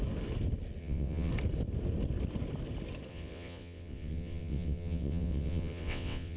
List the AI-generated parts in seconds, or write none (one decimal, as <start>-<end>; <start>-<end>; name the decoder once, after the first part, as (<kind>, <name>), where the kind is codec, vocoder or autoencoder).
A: 0.8-1.3 (vocoder, WaveNeXt); 3.1-6.4